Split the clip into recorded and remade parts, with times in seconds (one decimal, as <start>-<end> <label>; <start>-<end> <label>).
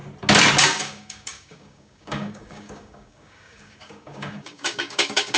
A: 0.0-0.6 recorded; 0.6-5.4 remade